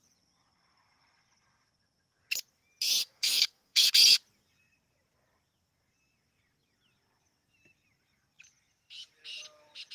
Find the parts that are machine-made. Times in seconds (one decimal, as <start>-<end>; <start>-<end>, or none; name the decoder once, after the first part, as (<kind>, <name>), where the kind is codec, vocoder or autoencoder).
3.0-3.9 (codec, SNAC)